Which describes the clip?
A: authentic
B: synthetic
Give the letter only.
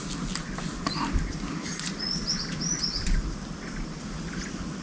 A